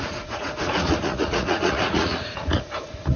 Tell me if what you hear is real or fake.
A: fake